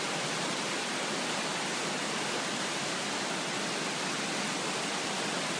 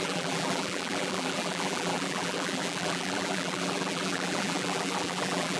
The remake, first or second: second